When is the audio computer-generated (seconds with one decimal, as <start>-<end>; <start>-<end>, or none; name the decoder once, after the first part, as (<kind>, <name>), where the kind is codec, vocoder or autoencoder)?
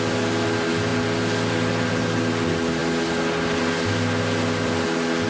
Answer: none